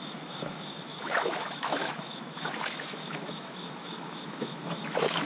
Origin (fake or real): fake